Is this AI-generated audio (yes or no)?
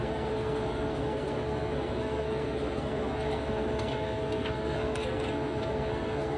yes